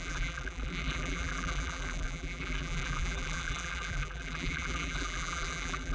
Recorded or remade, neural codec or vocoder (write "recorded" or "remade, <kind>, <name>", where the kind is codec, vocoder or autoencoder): remade, vocoder, BigVGAN v2